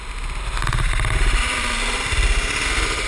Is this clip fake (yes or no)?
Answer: yes